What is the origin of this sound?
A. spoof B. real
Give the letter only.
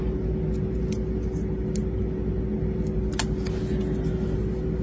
B